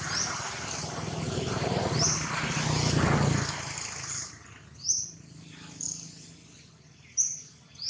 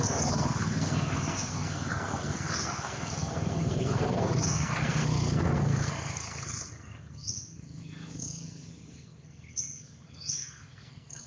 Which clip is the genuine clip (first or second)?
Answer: first